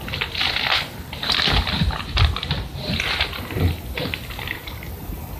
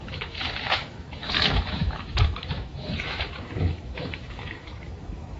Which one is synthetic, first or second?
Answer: second